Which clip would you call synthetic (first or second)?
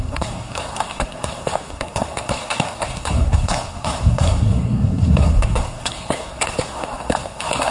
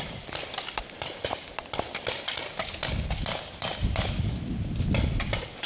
first